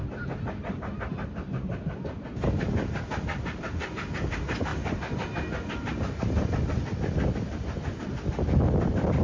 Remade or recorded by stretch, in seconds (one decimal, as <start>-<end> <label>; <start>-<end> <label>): 0.0-9.2 recorded